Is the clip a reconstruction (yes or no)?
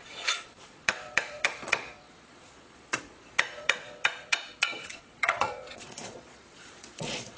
yes